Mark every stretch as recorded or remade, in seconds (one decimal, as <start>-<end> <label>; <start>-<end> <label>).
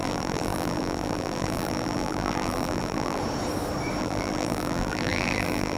0.0-3.2 remade; 3.2-4.0 recorded; 4.0-5.8 remade